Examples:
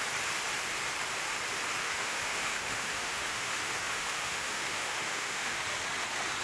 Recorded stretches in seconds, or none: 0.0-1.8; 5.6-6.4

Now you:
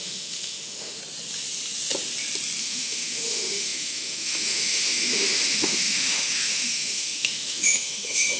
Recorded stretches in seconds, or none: 1.0-2.6

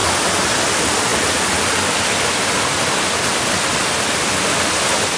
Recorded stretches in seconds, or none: 0.0-5.2

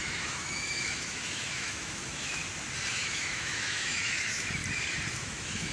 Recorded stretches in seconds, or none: 2.4-2.9; 4.6-5.1